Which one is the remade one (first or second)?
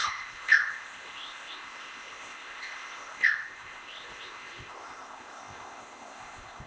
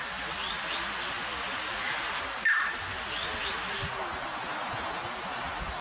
first